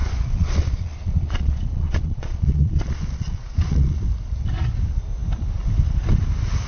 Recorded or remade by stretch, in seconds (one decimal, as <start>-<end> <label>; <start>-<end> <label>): 0.0-4.0 remade; 4.0-6.7 recorded